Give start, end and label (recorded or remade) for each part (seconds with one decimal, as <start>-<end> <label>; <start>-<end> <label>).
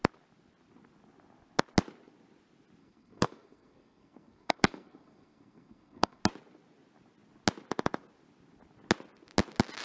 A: 0.0-2.8 recorded; 2.8-6.2 remade; 6.2-9.8 recorded